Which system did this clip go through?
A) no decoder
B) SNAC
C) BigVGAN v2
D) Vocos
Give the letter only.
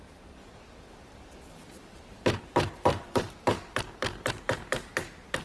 C